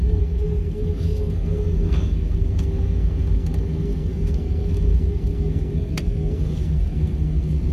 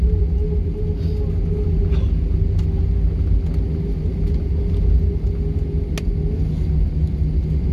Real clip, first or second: second